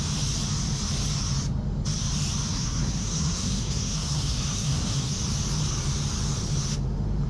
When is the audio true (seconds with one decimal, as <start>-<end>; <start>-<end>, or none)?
0.0-2.5; 5.1-7.3